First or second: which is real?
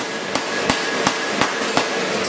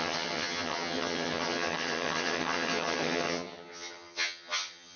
first